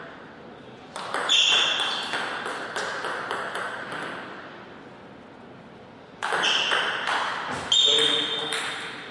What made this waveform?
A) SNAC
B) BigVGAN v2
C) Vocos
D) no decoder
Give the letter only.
D